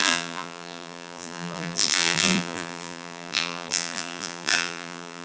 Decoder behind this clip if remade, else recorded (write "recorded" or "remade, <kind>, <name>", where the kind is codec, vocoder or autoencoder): remade, vocoder, BigVGAN v2